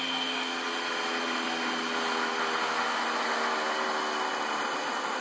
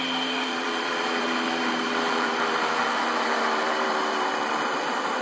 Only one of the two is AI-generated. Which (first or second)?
second